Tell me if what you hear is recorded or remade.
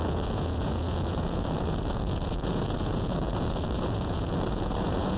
remade